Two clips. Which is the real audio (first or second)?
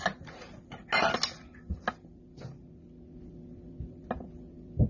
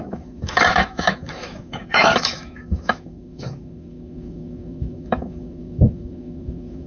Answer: first